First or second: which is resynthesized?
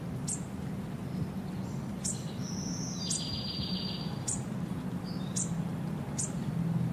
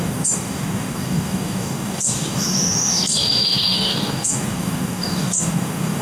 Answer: second